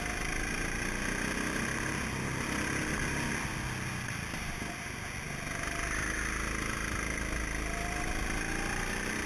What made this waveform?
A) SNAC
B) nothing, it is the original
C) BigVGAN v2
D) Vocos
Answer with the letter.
B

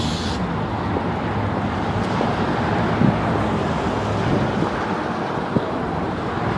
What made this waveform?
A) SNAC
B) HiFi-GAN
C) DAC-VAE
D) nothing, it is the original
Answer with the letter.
D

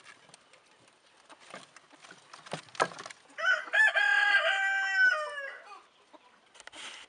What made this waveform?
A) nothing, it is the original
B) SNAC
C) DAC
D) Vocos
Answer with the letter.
A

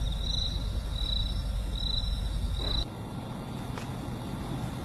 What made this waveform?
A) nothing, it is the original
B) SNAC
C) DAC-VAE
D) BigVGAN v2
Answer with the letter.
A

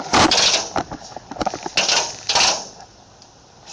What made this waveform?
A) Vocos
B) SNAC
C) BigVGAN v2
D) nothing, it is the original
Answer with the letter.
D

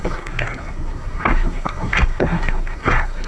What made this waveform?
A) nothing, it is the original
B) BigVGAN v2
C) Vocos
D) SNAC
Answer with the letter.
D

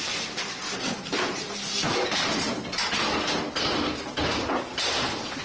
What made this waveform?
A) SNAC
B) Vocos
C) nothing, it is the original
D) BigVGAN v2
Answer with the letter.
C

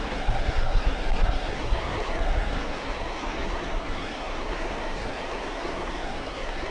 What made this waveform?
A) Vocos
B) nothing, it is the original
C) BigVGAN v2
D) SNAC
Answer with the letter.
D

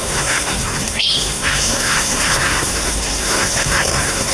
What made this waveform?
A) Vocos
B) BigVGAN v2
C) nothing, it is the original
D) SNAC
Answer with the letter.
D